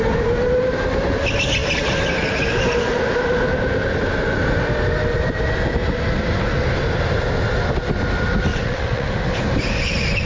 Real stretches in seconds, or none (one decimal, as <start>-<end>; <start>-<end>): 0.0-8.5; 9.1-10.3